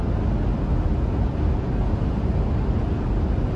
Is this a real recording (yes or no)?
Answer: yes